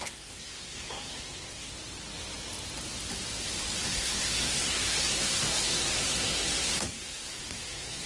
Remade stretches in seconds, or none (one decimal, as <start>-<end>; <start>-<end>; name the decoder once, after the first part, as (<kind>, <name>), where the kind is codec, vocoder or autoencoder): 0.0-1.7 (codec, SNAC); 3.8-8.1